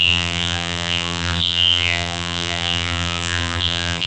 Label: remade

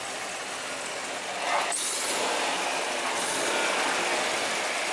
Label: recorded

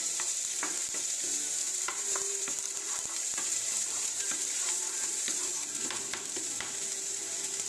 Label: remade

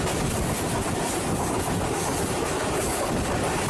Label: recorded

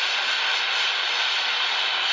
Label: recorded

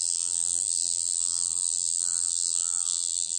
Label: remade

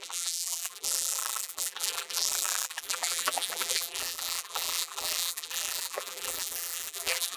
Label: remade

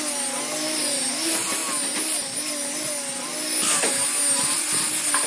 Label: recorded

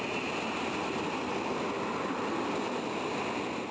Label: recorded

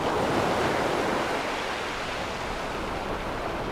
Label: recorded